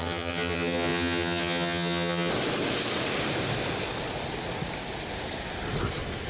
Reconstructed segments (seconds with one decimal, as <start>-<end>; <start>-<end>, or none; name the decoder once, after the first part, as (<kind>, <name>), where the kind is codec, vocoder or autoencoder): 0.0-2.3 (vocoder, HiFi-GAN)